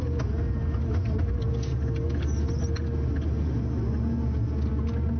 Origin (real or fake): real